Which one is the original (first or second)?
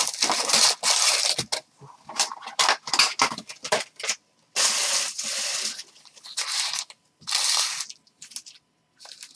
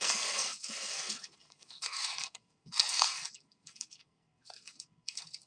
first